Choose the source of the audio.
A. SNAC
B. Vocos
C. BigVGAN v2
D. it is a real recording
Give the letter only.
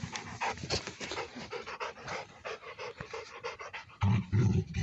C